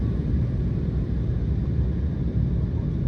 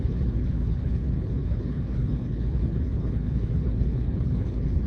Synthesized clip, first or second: second